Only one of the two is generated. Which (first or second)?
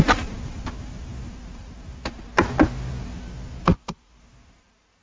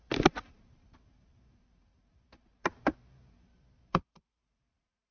second